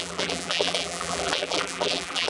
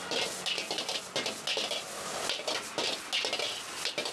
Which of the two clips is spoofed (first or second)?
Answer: first